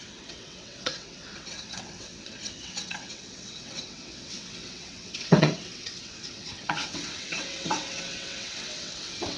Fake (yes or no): yes